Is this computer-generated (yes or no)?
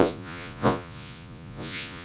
yes